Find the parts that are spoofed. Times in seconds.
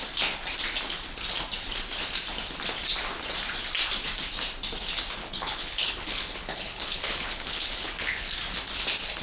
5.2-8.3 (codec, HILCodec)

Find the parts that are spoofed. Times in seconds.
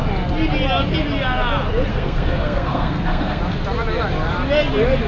1.9-3.4 (codec, SNAC)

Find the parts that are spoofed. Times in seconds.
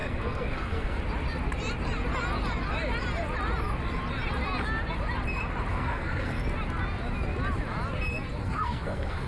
0.0-1.0 (codec, SNAC); 5.7-6.4; 8.4-9.3